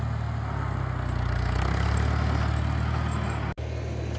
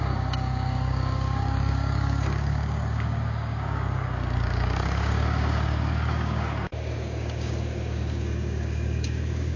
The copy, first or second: second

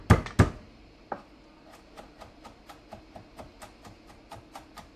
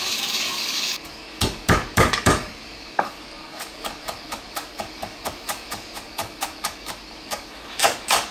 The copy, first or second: second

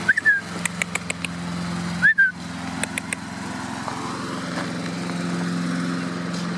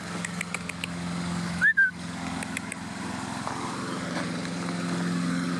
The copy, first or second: second